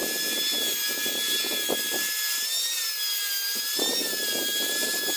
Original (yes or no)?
yes